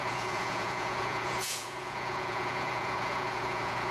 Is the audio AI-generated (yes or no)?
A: yes